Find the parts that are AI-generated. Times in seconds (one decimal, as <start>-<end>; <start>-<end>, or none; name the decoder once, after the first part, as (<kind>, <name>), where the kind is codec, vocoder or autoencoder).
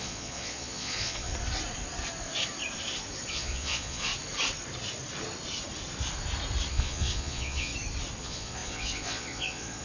0.0-1.3 (vocoder, Vocos); 3.3-4.1; 6.7-7.7; 8.2-9.8